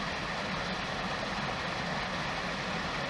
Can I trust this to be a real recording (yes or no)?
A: yes